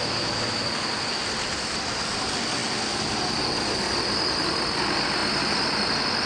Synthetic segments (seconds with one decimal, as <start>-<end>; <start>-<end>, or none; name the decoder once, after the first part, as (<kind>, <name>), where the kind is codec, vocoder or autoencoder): none